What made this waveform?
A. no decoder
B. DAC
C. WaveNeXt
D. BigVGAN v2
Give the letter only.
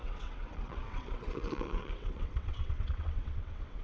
C